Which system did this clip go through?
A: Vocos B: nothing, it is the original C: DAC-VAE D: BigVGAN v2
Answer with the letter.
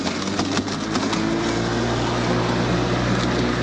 B